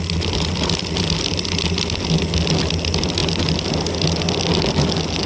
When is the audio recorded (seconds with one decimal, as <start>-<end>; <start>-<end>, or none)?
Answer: 0.0-5.3